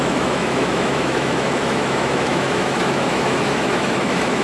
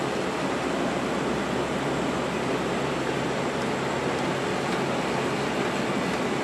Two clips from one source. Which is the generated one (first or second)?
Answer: first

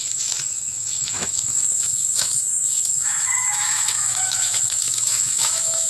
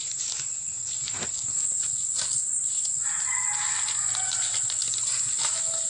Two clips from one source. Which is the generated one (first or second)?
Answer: first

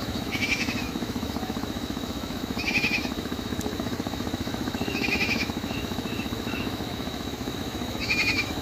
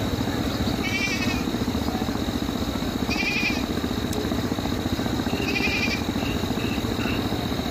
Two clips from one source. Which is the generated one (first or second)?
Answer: first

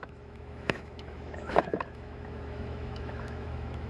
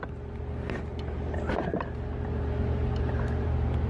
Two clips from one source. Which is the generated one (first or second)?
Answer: first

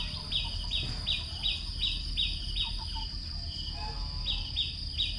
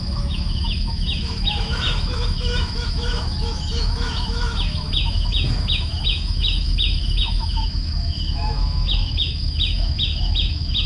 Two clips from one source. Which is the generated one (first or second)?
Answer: second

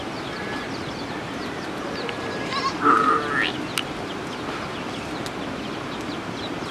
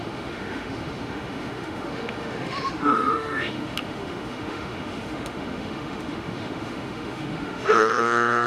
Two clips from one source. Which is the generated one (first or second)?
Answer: second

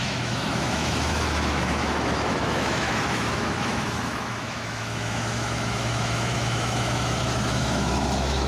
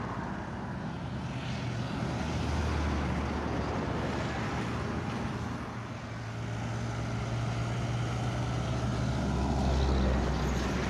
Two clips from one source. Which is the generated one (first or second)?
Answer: first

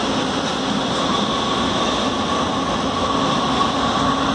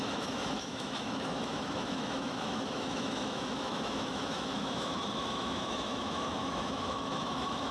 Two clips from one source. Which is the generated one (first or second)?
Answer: second